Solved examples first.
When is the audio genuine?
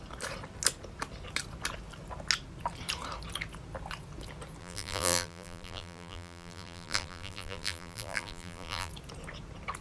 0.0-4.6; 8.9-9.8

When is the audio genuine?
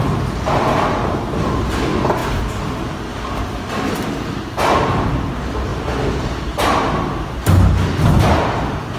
0.0-9.0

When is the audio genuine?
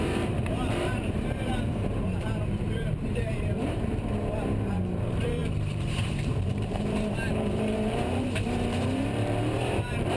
none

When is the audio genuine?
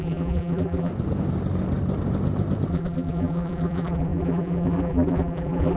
0.9-2.7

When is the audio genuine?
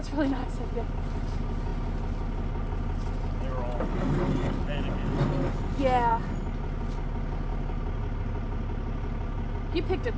0.0-10.2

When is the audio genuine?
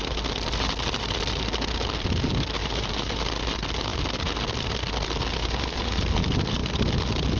0.0-2.6; 3.2-5.4; 6.0-7.4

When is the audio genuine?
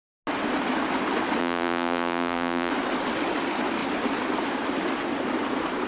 0.0-1.4; 2.7-5.9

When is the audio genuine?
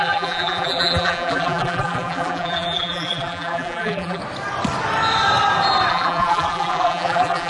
4.2-5.9